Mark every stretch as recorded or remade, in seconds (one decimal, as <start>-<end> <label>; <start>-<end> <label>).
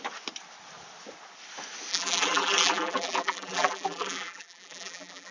0.0-1.9 recorded; 1.9-5.3 remade